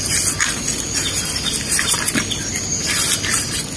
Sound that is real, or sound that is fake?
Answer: real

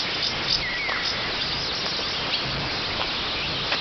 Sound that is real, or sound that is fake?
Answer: real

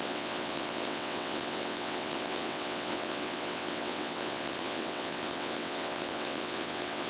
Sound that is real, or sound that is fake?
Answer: fake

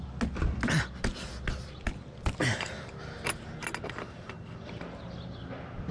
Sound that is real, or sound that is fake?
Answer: real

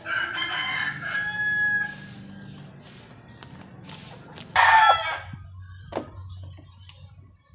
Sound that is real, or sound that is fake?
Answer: real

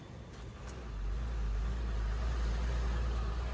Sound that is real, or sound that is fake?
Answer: real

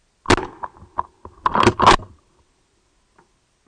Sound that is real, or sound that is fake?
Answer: real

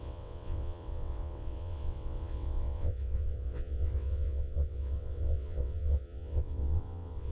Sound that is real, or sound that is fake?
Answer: fake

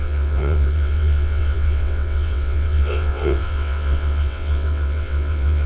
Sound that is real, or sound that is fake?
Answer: fake